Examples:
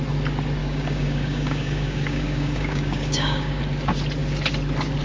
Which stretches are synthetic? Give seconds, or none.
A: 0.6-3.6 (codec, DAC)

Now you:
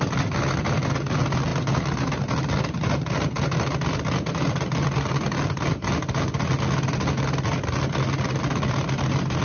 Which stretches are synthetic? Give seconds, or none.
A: none

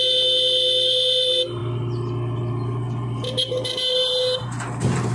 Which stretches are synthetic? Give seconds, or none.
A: none